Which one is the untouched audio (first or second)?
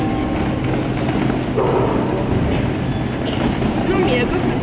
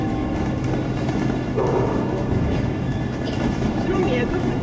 first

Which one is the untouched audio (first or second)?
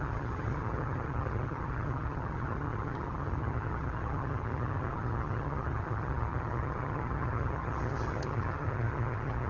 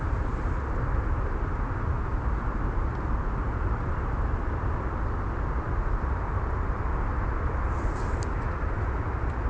second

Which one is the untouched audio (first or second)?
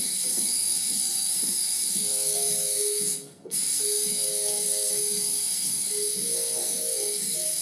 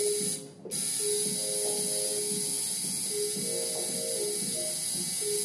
second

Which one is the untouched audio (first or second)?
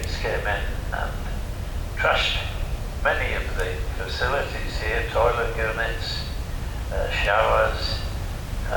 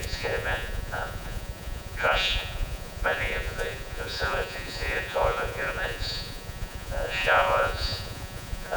first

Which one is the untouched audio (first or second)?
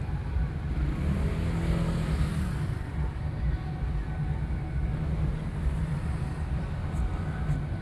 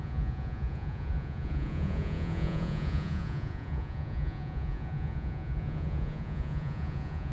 first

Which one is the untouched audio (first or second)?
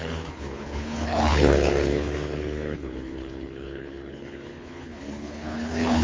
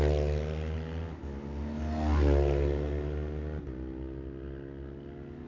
second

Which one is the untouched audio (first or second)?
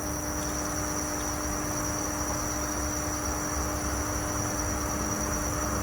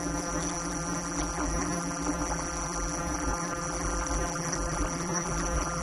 first